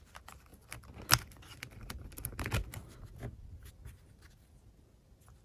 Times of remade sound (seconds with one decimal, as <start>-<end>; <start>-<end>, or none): none